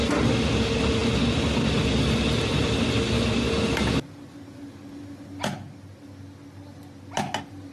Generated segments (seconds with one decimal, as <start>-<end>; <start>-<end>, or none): none